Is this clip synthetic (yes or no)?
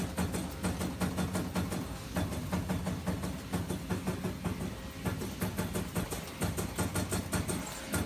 no